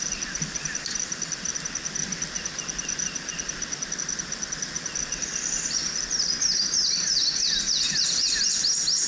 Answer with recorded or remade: recorded